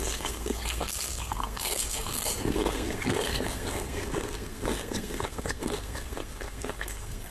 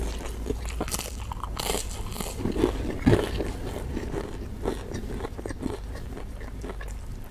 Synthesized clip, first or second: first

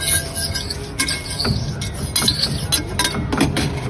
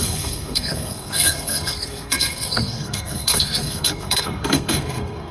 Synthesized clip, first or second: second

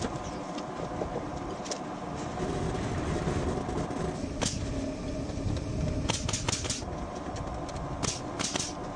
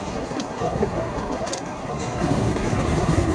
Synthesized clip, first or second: second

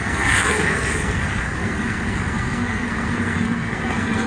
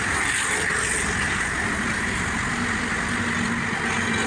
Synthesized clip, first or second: first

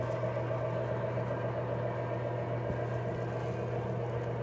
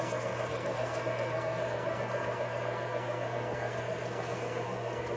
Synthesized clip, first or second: second